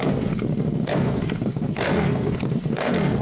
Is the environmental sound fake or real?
fake